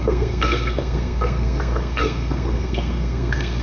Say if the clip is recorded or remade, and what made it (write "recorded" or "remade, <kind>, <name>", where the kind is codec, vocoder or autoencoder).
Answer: remade, codec, SNAC